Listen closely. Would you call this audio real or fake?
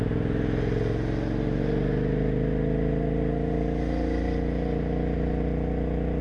real